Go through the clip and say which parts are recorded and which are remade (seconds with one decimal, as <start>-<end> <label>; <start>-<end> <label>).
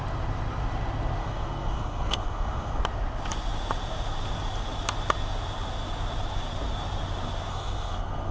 0.0-1.2 recorded; 1.2-2.8 remade; 2.8-7.5 recorded; 7.5-8.3 remade